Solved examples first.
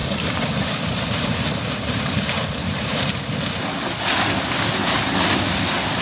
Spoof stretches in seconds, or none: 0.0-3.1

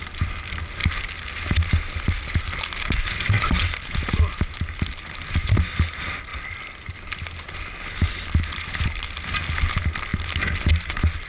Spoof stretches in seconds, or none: 6.3-6.9

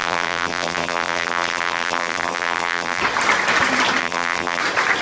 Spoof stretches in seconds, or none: 0.0-3.0; 4.0-4.6

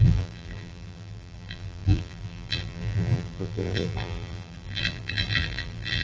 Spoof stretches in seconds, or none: 0.0-6.0